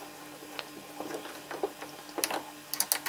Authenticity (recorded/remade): recorded